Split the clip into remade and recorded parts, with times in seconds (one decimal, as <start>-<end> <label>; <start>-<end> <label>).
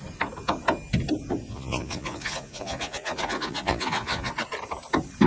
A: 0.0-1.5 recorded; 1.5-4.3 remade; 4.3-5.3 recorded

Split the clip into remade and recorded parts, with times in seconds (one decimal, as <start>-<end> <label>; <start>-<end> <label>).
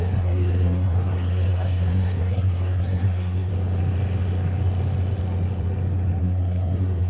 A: 0.0-3.5 remade; 3.5-6.2 recorded; 6.2-7.1 remade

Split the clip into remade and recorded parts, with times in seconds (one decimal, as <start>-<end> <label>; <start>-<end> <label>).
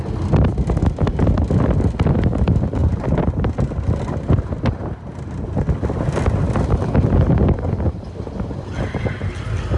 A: 0.0-9.8 recorded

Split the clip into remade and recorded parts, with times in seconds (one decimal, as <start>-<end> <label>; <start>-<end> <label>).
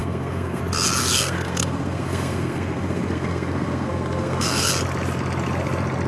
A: 0.0-0.6 remade; 0.6-1.0 recorded; 1.0-4.7 remade; 4.7-6.1 recorded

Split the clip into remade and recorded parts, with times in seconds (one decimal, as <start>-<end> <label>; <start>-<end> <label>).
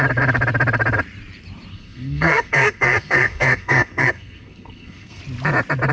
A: 0.0-1.7 recorded; 1.7-5.2 remade; 5.2-5.9 recorded